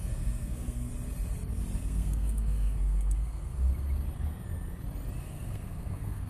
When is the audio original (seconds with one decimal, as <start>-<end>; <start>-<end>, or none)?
0.9-1.8; 3.7-5.2